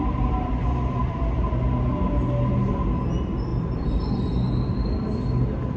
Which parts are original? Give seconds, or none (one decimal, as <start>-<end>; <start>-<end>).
0.0-1.0; 1.5-3.5